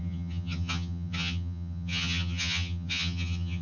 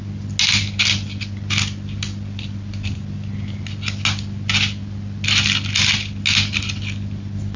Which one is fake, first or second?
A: first